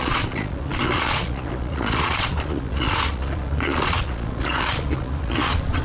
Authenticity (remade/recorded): remade